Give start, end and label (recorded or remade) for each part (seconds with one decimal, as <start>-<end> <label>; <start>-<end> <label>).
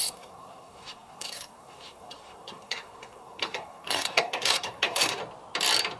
0.0-5.2 remade; 5.2-6.0 recorded